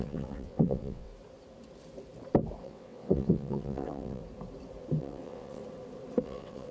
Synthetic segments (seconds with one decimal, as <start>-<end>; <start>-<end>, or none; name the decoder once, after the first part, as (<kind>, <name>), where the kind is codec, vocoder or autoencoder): 0.0-1.1 (vocoder, WaveNeXt); 2.6-4.2; 5.0-5.6; 6.2-6.7